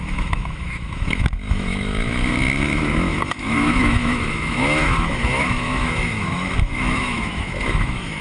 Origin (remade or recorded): remade